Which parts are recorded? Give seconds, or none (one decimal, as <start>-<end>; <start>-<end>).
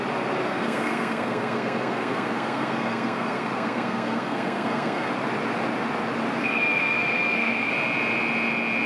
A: 0.0-0.5; 5.1-6.4; 7.7-8.9